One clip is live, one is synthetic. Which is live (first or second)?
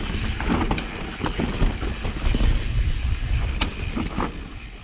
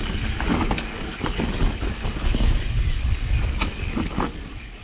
first